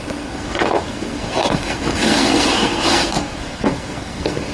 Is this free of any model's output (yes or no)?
no